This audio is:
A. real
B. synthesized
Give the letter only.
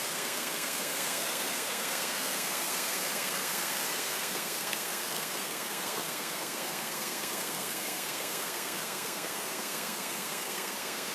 B